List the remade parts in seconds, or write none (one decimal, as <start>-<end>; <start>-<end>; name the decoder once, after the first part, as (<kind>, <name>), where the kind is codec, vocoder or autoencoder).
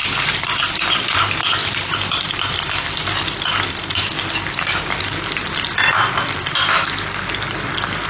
none